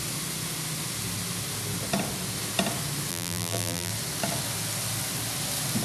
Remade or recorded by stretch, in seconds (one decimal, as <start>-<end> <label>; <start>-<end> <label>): 0.0-3.1 recorded; 3.1-3.9 remade; 3.9-5.8 recorded